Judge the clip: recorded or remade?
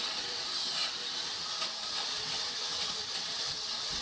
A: remade